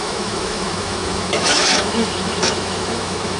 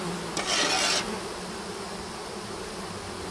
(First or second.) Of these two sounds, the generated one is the first